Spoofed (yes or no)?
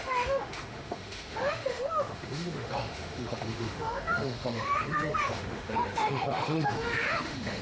yes